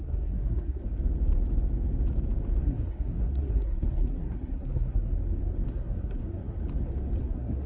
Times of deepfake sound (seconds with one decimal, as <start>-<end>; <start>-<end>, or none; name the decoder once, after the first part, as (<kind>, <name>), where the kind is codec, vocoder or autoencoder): 0.0-0.8 (codec, SNAC); 2.6-5.1; 5.7-6.6; 7.2-7.7